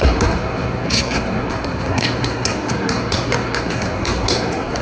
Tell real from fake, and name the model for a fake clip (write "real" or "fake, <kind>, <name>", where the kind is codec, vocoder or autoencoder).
fake, codec, SNAC